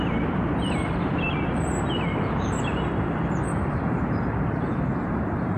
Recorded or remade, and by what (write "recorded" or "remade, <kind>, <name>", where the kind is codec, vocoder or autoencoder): remade, vocoder, BigVGAN v2